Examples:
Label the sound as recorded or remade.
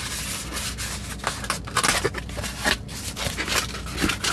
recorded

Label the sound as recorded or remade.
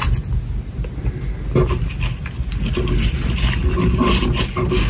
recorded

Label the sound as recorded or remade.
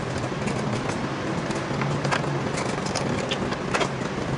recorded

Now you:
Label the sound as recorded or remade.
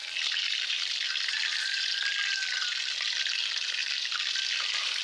recorded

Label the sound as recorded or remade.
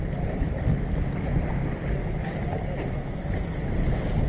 recorded